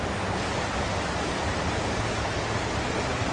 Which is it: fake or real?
real